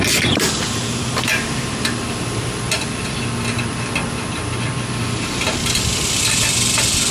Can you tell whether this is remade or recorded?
remade